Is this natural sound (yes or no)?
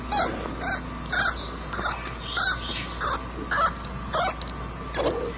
yes